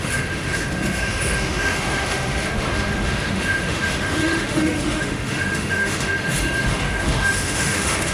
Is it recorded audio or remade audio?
remade